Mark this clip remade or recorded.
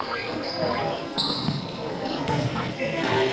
remade